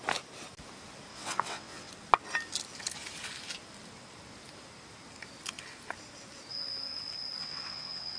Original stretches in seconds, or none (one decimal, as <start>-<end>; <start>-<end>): 0.0-1.1; 1.9-7.4

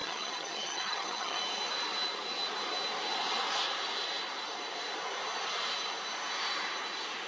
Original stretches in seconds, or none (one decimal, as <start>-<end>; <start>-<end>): 1.4-7.3

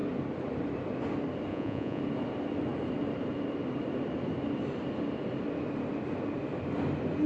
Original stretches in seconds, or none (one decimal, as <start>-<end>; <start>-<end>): 0.0-1.5; 2.0-7.3

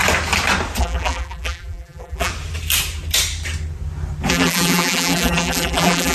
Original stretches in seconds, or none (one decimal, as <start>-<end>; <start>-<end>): 0.0-0.8; 2.3-4.3

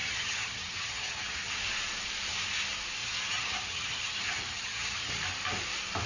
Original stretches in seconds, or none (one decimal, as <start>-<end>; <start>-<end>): 1.5-3.0; 5.1-6.1

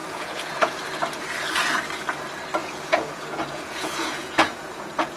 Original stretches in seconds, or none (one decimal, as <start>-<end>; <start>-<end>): 0.8-2.6

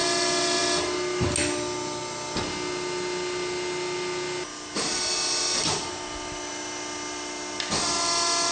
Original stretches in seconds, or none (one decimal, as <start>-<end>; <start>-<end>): 0.0-8.5